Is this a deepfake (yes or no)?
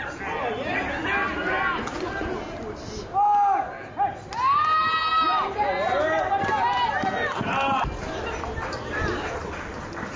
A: no